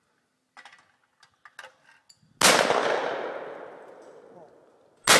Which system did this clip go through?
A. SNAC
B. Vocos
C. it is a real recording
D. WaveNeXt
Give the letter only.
C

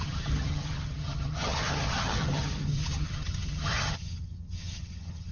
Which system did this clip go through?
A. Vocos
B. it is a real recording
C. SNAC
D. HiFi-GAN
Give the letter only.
D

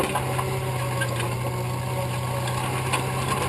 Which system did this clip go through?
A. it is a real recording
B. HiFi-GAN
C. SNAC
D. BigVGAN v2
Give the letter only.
A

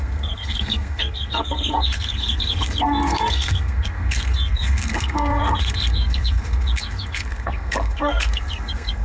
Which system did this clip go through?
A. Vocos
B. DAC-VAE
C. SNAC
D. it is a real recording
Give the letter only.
C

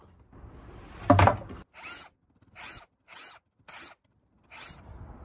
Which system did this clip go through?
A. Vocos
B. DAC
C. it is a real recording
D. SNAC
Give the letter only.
C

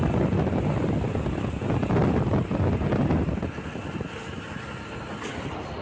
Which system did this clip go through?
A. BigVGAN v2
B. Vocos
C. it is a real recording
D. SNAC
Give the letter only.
C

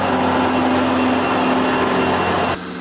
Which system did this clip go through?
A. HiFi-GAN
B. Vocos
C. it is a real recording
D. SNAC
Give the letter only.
C